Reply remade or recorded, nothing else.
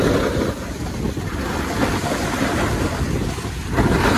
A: recorded